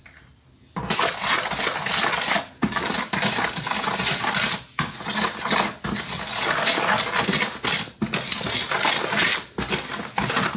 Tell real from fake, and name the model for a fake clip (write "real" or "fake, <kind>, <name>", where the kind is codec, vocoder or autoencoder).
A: real